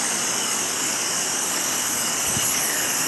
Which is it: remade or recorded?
remade